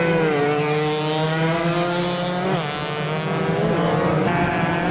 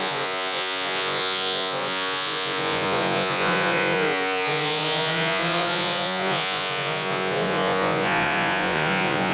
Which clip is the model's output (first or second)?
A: second